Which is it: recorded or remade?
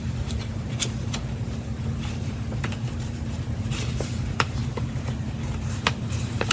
remade